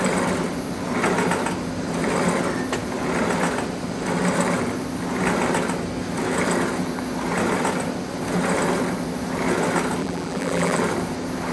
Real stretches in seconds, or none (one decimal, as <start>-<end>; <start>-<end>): 0.0-10.0; 10.8-11.5